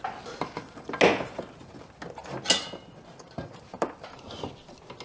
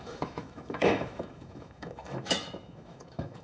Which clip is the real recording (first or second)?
first